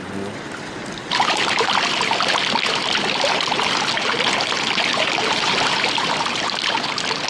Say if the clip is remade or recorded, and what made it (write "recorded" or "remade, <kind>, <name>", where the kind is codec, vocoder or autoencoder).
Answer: recorded